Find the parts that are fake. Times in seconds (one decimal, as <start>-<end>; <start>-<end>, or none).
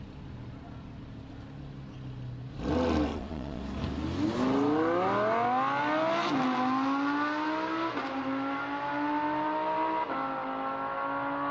3.1-3.6